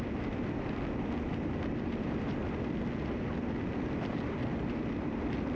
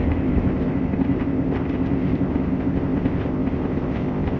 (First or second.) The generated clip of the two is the second